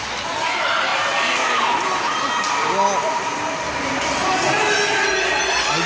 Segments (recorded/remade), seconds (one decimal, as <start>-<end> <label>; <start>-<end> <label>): 0.0-5.9 recorded